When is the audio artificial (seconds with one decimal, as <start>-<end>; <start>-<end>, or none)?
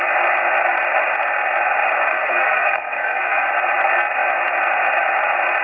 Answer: 2.1-3.5